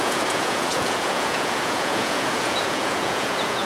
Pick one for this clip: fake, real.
fake